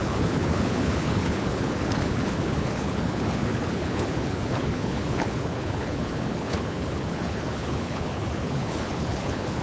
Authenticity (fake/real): fake